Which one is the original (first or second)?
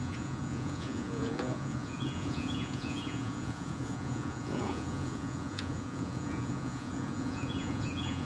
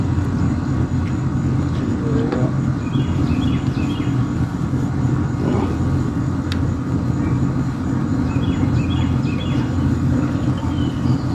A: second